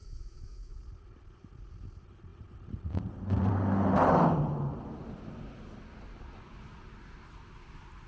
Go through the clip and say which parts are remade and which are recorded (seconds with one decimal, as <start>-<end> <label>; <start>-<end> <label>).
0.0-0.8 remade; 0.8-8.1 recorded